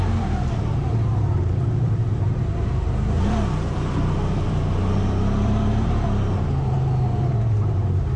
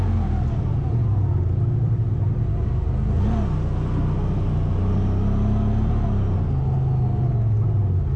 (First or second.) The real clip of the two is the second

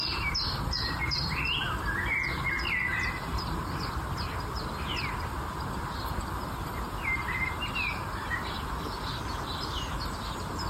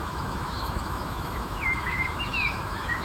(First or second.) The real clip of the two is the first